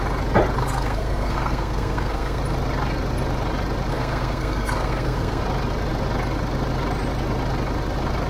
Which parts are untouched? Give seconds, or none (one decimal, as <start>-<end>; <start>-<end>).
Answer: 0.0-0.6; 2.4-3.9; 5.4-8.3